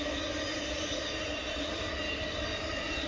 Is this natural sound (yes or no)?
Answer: yes